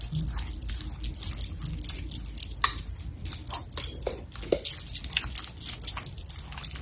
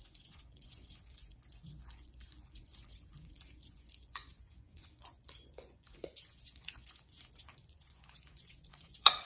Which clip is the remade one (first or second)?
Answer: second